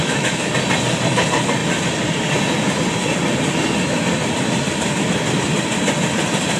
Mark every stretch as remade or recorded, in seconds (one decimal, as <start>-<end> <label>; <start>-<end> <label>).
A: 0.0-0.5 remade; 0.5-6.6 recorded